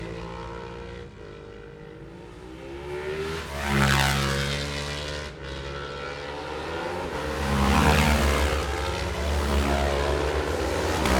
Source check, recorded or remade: recorded